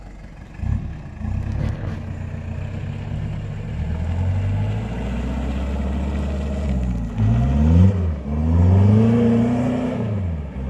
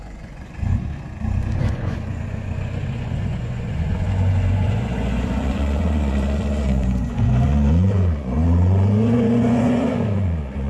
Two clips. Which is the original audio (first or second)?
first